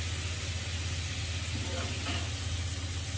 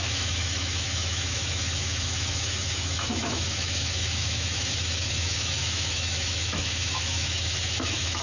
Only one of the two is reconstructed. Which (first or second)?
second